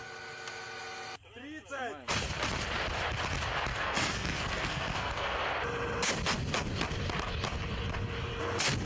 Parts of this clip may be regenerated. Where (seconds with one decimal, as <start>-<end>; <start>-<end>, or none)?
3.7-5.4

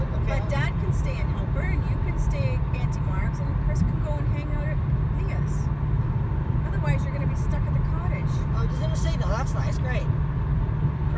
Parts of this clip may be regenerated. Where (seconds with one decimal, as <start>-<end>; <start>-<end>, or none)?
7.5-8.4